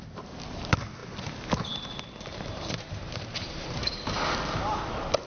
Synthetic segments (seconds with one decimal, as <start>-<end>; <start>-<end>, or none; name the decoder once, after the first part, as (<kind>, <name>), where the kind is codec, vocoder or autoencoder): 2.3-4.0 (vocoder, BigVGAN v2)